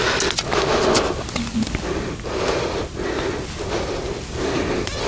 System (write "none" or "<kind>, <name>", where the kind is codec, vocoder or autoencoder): none